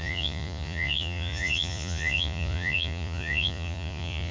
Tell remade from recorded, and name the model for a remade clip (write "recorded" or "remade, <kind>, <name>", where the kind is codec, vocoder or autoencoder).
remade, vocoder, Vocos